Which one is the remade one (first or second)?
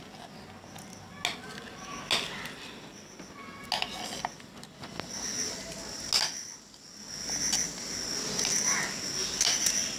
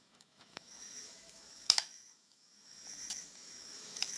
second